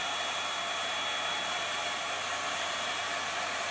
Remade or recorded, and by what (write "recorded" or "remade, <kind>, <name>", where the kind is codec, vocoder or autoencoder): recorded